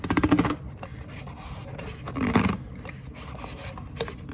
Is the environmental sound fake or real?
real